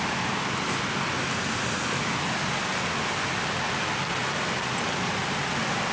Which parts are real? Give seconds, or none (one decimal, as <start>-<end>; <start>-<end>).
0.0-5.9